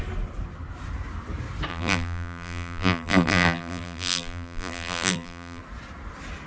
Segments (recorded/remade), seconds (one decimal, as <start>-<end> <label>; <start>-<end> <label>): 0.0-1.7 recorded; 1.7-5.6 remade; 5.6-6.5 recorded